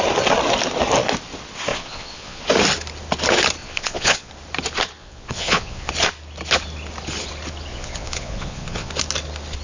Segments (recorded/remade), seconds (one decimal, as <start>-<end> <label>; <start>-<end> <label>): 0.0-1.7 recorded; 1.7-2.4 remade; 2.4-3.6 recorded; 3.6-4.3 remade; 4.3-5.0 recorded; 5.0-5.9 remade; 5.9-7.7 recorded; 7.7-8.9 remade; 8.9-9.6 recorded